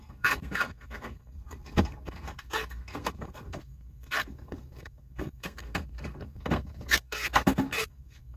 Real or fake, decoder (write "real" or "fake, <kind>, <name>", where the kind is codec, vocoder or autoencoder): fake, codec, SNAC